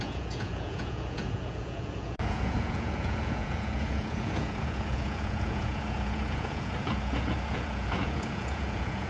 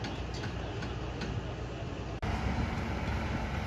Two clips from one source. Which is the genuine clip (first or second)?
second